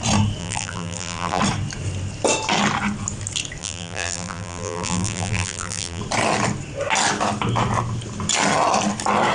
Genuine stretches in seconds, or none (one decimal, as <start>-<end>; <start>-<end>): 0.0-0.4; 1.4-3.6; 6.0-9.3

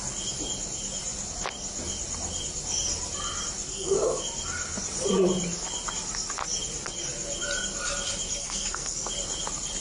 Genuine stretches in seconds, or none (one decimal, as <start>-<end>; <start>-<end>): 0.0-3.7; 4.2-8.4; 9.1-9.8